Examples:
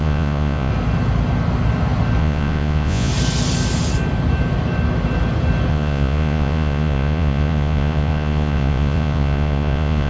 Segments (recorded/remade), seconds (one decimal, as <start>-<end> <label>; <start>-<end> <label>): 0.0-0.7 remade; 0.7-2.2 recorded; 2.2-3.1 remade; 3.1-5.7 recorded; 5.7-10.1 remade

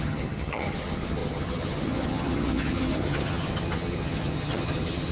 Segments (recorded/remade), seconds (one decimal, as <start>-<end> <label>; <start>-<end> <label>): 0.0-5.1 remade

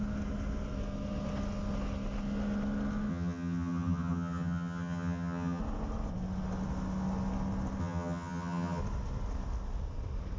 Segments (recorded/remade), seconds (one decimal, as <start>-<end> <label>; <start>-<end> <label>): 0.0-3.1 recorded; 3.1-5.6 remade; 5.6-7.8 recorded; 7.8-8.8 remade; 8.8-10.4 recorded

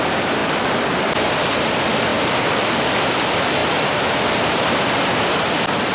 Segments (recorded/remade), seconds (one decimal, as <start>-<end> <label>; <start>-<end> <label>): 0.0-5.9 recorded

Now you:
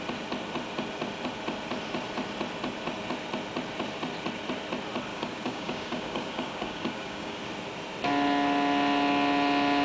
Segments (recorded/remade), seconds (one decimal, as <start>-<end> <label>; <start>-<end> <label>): 0.0-5.1 recorded; 5.1-7.4 remade; 7.4-9.8 recorded

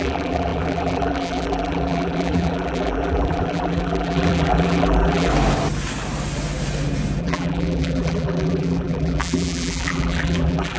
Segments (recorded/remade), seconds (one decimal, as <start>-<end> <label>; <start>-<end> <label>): 0.0-5.3 remade; 5.3-7.2 recorded; 7.2-10.8 remade

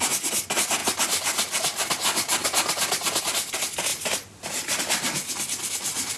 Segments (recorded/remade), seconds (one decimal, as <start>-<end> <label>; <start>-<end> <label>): 0.0-0.8 recorded; 0.8-3.2 remade; 3.2-3.9 recorded; 3.9-4.8 remade; 4.8-6.2 recorded